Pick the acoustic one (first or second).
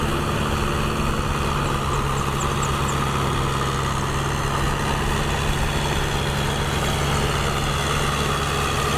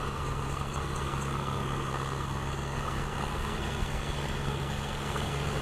first